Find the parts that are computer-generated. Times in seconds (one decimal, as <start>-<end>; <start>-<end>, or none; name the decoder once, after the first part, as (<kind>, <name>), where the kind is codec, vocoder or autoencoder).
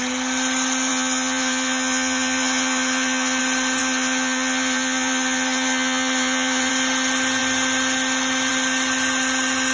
0.9-3.4 (vocoder, Vocos); 3.8-6.7